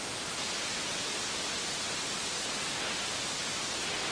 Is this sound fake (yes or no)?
no